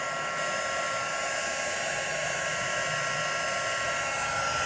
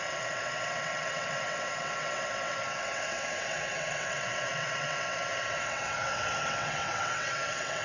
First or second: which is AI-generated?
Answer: second